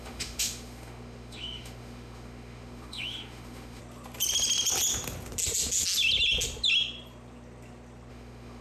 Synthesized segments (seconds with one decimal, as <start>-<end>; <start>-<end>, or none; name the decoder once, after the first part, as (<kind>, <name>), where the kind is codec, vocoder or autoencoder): 0.0-3.8 (autoencoder, DAC-VAE); 8.1-8.6